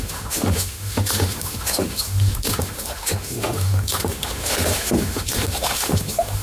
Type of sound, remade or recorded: remade